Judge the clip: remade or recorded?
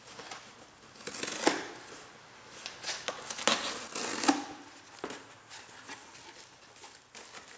recorded